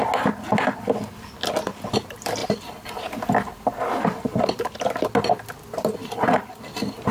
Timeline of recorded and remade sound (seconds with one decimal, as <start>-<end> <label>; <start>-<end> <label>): 0.0-2.4 recorded; 2.4-4.5 remade; 4.5-6.0 recorded; 6.0-7.1 remade